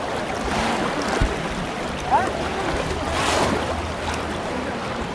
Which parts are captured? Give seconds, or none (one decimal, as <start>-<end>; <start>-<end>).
0.0-5.1